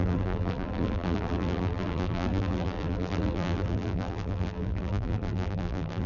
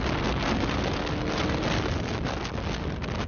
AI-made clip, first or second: first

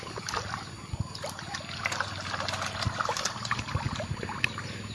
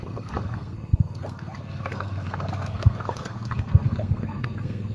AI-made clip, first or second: second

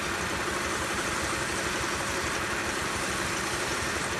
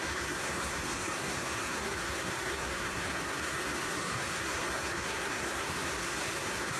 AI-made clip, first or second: second